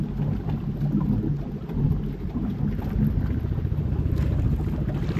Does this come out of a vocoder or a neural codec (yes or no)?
no